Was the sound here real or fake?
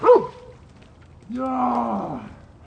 real